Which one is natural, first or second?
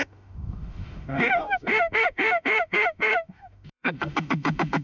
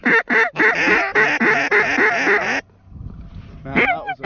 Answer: second